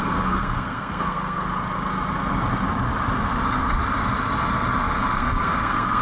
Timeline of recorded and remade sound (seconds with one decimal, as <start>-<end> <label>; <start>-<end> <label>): 0.0-1.5 remade; 1.5-5.1 recorded; 5.1-6.0 remade